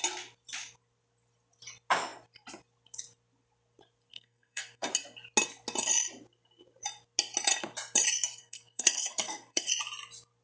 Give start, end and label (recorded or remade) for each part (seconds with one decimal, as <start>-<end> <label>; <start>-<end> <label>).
0.0-4.1 recorded; 4.1-4.9 remade; 4.9-8.4 recorded; 8.4-9.7 remade; 9.7-10.4 recorded